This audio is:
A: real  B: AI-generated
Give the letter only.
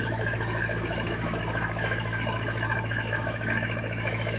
B